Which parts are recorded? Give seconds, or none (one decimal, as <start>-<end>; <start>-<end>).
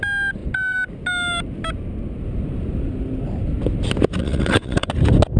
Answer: 0.0-4.2; 4.9-5.4